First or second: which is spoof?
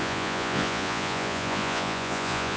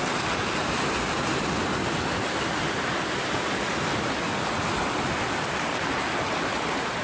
first